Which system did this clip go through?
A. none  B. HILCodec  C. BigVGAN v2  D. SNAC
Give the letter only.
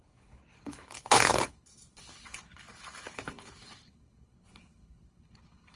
B